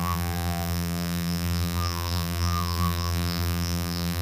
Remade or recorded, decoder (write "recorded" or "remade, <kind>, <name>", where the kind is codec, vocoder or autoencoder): remade, vocoder, BigVGAN v2